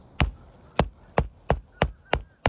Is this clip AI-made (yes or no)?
no